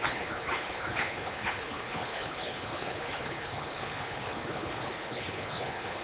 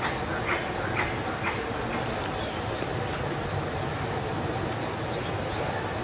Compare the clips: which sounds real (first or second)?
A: second